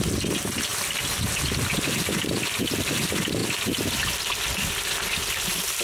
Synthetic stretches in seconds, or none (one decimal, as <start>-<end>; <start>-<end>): none